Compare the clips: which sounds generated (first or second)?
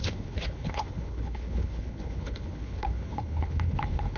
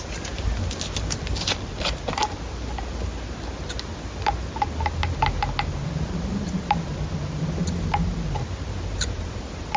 first